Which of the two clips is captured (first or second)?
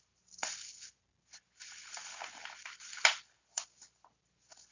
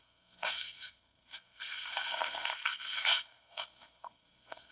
first